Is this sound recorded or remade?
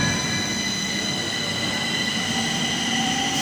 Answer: recorded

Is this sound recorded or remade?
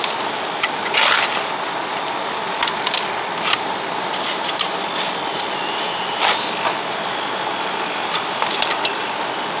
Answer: recorded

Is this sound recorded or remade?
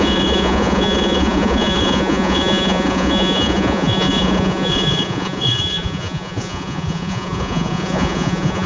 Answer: remade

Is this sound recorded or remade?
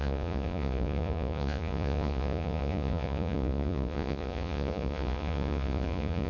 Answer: remade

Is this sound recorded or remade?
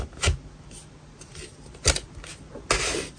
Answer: recorded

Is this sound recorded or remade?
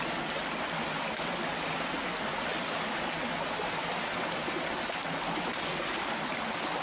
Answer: recorded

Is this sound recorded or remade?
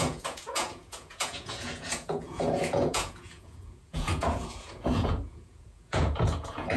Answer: remade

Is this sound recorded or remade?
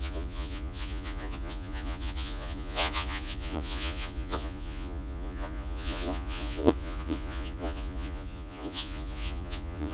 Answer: remade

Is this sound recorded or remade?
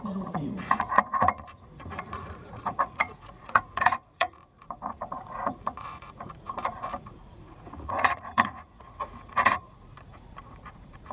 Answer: remade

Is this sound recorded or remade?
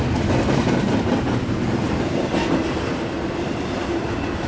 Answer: recorded